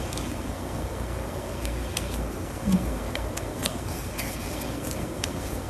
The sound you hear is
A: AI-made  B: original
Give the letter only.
A